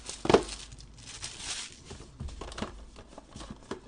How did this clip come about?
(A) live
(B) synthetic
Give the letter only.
A